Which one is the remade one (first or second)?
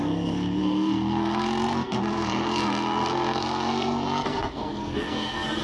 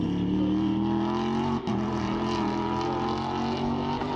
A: first